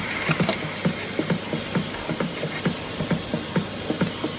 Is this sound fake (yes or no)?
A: no